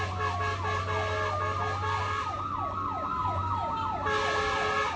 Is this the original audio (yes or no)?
yes